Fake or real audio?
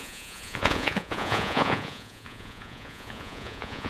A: fake